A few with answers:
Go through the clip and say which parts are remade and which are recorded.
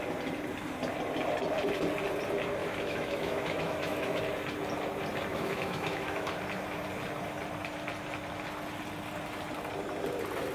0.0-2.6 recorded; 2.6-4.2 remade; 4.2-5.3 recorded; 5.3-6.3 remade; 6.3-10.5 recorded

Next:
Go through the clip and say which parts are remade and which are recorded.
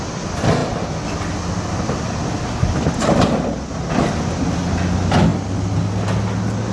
0.0-6.7 recorded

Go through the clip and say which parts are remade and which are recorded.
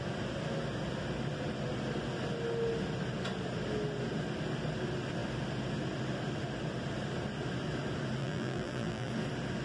0.0-8.2 recorded; 8.2-9.1 remade; 9.1-9.6 recorded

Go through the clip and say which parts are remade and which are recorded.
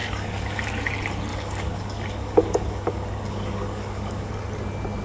0.0-0.7 remade; 0.7-1.3 recorded; 1.3-4.3 remade; 4.3-5.0 recorded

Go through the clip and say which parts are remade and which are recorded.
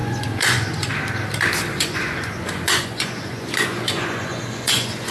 0.0-0.9 remade; 0.9-1.7 recorded; 1.7-5.1 remade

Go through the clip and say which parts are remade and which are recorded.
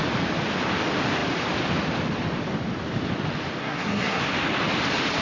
0.0-3.6 recorded; 3.6-4.2 remade; 4.2-5.2 recorded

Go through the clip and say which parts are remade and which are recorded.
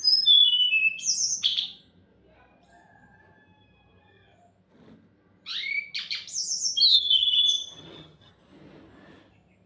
0.0-6.9 recorded; 6.9-8.3 remade; 8.3-9.7 recorded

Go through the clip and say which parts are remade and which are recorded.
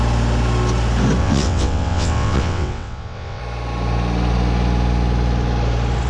0.0-1.2 recorded; 1.2-3.4 remade; 3.4-6.1 recorded